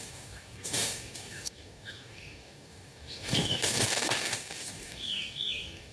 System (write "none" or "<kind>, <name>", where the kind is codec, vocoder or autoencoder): codec, DAC